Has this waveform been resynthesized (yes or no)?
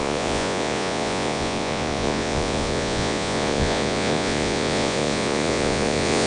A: yes